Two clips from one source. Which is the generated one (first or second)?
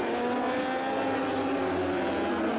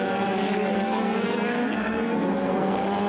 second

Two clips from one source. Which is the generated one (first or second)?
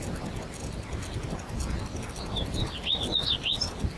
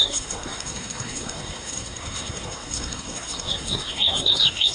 second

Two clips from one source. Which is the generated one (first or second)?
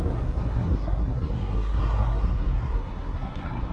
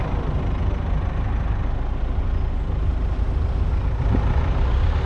first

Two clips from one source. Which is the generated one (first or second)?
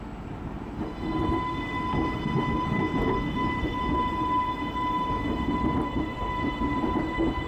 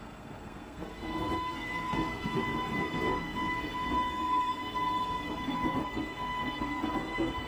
second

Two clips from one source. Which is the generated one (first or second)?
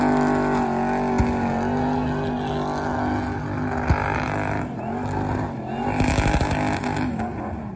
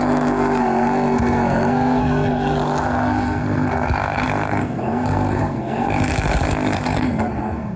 second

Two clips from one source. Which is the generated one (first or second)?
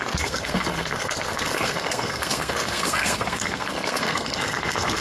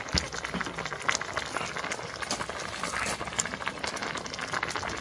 first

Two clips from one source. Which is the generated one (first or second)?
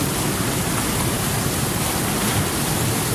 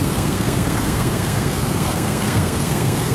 second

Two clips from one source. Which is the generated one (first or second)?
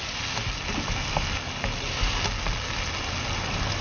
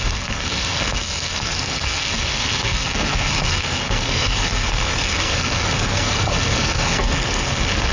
second